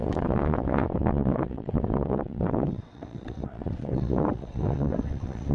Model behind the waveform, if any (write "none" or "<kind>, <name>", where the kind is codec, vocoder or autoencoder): vocoder, WaveNeXt